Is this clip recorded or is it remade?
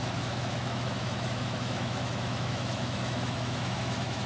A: remade